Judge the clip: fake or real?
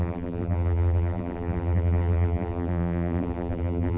fake